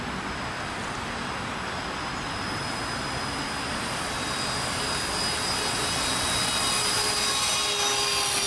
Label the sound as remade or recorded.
recorded